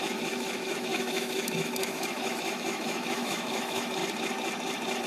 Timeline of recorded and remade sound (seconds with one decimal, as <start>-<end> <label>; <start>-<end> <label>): 0.0-4.0 remade; 4.0-5.1 recorded

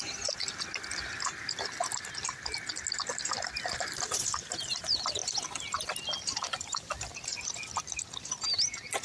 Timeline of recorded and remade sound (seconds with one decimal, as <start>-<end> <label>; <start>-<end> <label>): 0.0-9.0 recorded

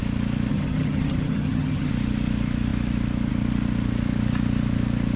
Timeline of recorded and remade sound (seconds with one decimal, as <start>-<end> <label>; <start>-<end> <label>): 0.0-0.5 recorded; 0.5-1.9 remade; 1.9-5.2 recorded

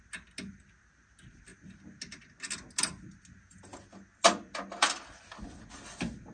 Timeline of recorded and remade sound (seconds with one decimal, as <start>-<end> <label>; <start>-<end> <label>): 0.0-6.3 recorded

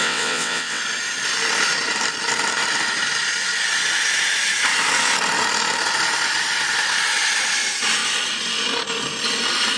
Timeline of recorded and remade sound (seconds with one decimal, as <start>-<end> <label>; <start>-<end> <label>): 0.0-0.8 remade; 0.8-9.8 recorded